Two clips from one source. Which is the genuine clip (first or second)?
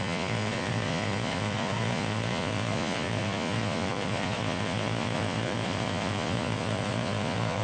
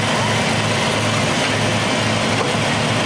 second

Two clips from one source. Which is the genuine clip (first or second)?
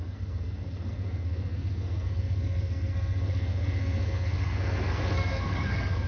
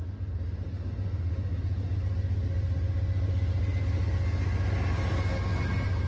second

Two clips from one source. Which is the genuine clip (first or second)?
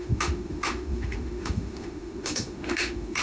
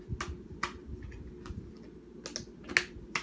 second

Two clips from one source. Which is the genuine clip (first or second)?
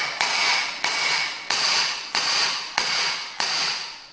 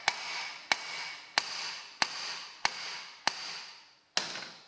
second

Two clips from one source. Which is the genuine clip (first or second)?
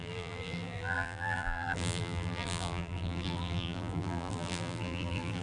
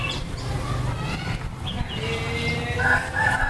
second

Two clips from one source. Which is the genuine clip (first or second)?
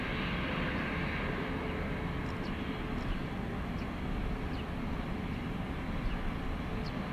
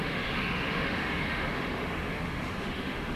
first